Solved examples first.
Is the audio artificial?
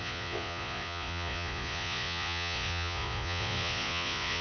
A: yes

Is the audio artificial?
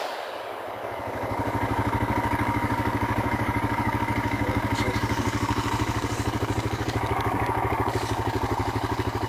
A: yes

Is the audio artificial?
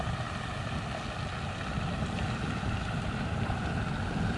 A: no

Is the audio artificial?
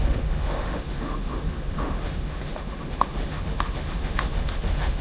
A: yes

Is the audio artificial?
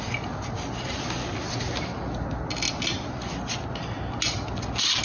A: no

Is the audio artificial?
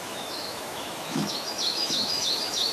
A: yes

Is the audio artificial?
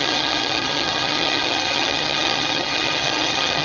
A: yes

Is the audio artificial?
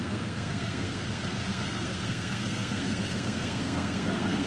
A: yes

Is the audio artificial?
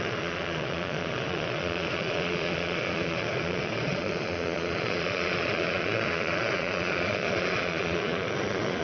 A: yes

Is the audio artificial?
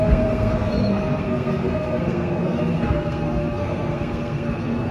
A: yes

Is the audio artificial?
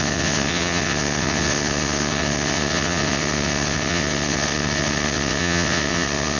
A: yes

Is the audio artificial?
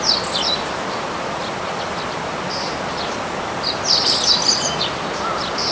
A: no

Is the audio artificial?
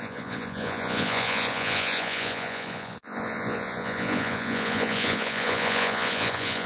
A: yes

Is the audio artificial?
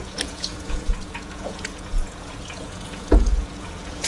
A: yes